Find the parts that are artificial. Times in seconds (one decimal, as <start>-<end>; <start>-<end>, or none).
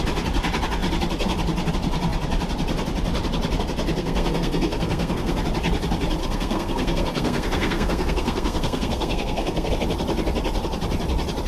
4.0-5.4; 6.2-9.7